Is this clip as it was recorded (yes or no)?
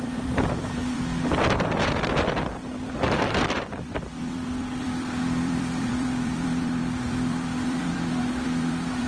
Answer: no